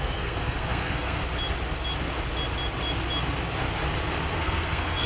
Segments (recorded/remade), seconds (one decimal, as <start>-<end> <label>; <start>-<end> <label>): 0.0-1.2 remade; 1.2-4.3 recorded; 4.3-5.1 remade